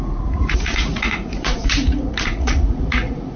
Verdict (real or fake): fake